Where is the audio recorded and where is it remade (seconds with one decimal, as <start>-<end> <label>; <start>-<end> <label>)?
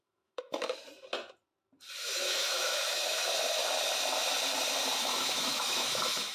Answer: 0.0-0.8 remade; 0.8-2.0 recorded; 2.0-3.6 remade; 3.6-5.0 recorded; 5.0-6.3 remade